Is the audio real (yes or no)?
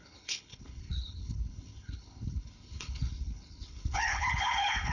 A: no